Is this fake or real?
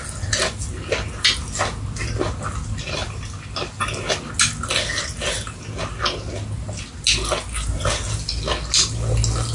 real